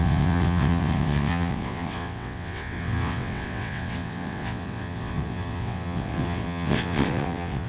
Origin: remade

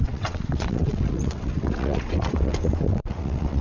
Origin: remade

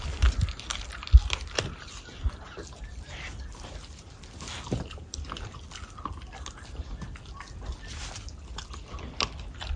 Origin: recorded